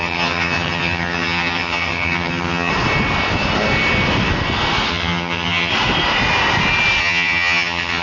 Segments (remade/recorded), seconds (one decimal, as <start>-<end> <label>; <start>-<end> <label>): 0.0-2.7 remade; 2.7-4.9 recorded; 4.9-5.7 remade; 5.7-7.0 recorded; 7.0-8.0 remade